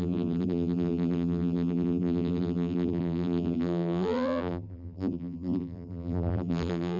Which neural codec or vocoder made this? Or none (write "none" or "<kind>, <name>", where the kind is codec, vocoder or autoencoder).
vocoder, BigVGAN v2